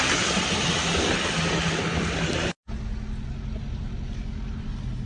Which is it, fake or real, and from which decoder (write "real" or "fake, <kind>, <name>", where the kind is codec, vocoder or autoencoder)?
real